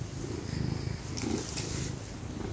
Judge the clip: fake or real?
real